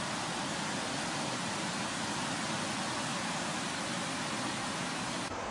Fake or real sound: real